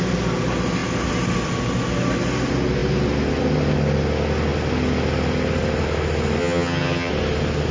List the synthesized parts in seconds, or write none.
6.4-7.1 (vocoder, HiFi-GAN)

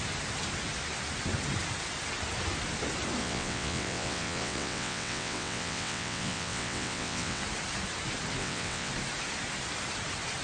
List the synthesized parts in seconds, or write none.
3.2-7.4 (vocoder, WaveNeXt); 8.4-8.9

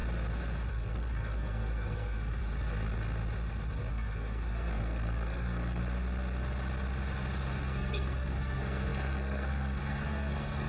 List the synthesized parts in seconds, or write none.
0.7-2.4 (codec, SNAC); 3.9-5.8; 7.6-10.7